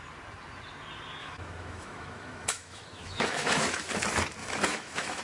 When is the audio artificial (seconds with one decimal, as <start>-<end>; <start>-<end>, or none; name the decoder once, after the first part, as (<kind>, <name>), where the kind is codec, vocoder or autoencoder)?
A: 1.2-3.9 (autoencoder, DAC-VAE); 4.4-5.2